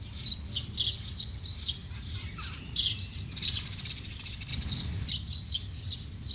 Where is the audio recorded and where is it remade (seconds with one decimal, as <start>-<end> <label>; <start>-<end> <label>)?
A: 0.0-1.8 recorded; 1.8-3.9 remade; 3.9-6.3 recorded